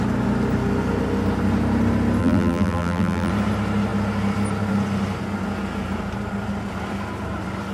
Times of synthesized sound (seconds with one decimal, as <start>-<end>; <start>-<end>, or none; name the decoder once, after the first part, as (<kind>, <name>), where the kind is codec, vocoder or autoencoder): 2.2-3.3 (vocoder, BigVGAN v2)